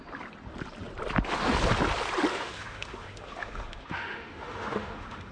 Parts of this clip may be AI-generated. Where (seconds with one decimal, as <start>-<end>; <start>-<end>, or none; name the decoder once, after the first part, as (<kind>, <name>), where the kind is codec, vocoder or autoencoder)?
2.3-5.3 (autoencoder, DAC-VAE)